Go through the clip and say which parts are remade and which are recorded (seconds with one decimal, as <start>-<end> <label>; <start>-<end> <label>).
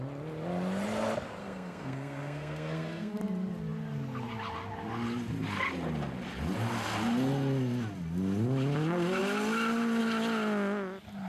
0.0-1.4 recorded; 1.4-3.2 remade; 3.2-11.3 recorded